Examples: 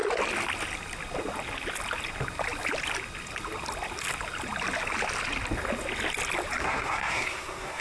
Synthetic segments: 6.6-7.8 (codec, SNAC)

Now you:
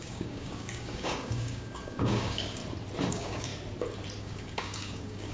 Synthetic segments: 0.0-2.6 (codec, DAC); 3.1-3.5; 4.2-5.3

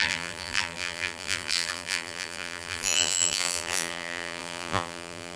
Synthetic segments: 0.0-5.4 (vocoder, BigVGAN v2)

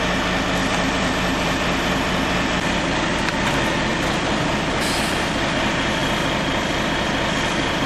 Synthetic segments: 0.6-3.5 (vocoder, BigVGAN v2); 3.9-5.4; 6.0-6.9

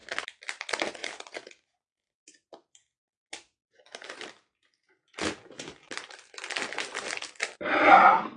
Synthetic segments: 1.0-1.5 (vocoder, BigVGAN v2); 3.6-6.4